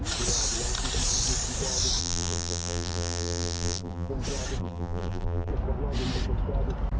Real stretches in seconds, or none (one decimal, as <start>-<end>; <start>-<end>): 0.0-2.0; 4.1-4.6; 5.5-7.0